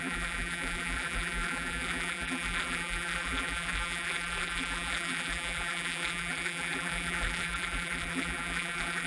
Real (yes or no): no